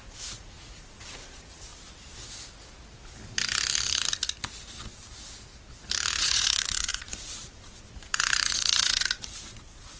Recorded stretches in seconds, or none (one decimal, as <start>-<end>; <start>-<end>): 1.7-6.2